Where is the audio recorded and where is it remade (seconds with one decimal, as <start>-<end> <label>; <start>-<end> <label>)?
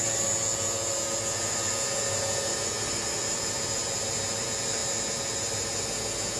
0.0-6.4 recorded